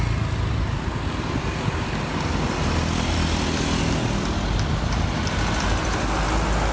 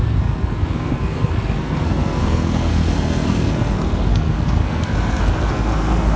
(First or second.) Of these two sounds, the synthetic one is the second